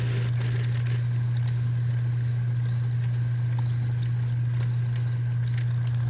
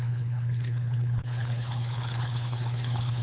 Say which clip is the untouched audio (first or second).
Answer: first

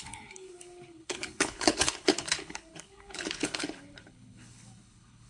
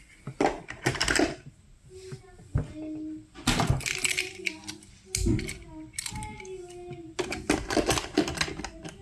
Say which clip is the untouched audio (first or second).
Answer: second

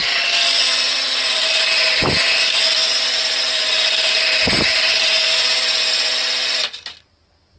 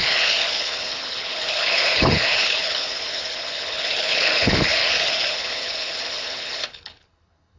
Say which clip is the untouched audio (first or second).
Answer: first